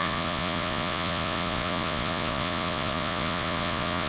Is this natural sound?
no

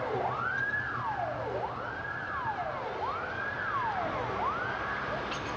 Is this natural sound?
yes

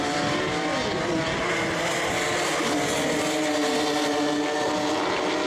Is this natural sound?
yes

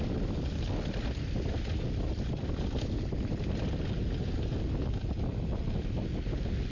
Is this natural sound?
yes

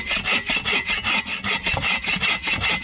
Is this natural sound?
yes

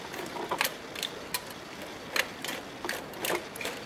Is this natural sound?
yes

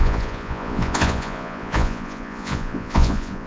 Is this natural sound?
no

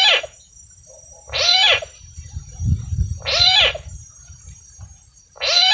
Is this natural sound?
no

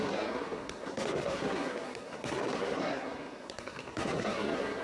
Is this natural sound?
no